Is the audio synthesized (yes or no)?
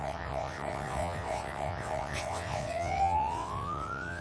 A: yes